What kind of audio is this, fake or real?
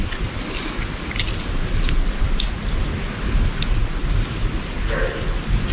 real